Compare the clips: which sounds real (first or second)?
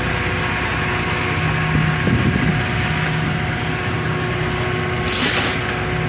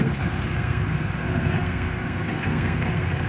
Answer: first